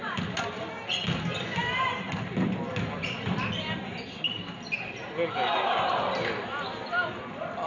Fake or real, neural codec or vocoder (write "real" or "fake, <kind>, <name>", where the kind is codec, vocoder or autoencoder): real